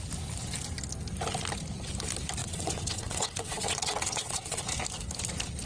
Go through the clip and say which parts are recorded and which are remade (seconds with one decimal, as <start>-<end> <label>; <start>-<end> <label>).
0.0-2.4 recorded; 2.4-4.6 remade; 4.6-5.7 recorded